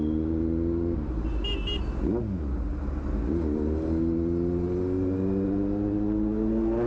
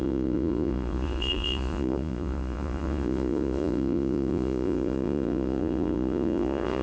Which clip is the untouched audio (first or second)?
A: first